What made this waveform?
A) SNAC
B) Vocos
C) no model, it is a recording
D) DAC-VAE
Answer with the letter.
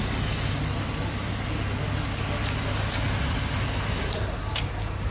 C